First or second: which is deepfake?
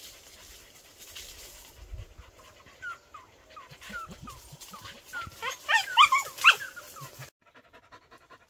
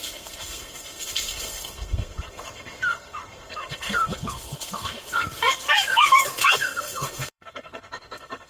second